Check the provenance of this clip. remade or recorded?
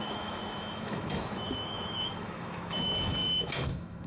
remade